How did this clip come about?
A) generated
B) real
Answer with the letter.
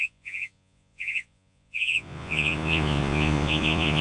A